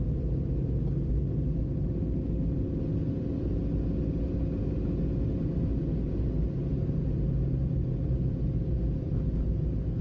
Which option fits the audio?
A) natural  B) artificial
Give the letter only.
A